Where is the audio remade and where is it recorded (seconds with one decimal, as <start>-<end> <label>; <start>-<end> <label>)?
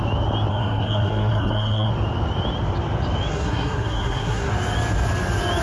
0.0-0.5 recorded; 0.5-1.9 remade; 1.9-3.3 recorded; 3.3-4.5 remade; 4.5-5.6 recorded